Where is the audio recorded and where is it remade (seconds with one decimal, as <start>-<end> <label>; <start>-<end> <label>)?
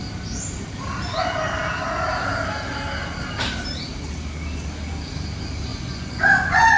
0.0-5.7 recorded; 5.7-6.8 remade